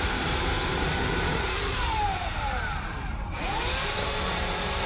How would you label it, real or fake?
fake